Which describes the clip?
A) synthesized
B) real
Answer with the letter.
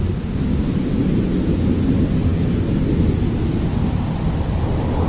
B